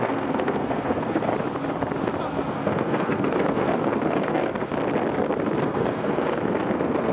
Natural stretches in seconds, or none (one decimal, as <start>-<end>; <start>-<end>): 1.3-2.5; 4.7-5.6